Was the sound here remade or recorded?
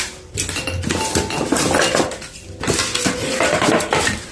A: recorded